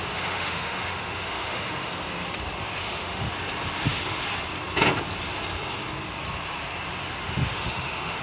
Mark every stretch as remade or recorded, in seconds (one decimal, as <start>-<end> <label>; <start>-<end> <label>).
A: 0.0-1.9 remade; 1.9-2.8 recorded; 2.8-3.3 remade; 3.3-7.2 recorded; 7.2-8.2 remade